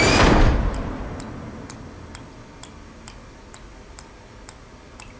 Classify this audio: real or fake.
real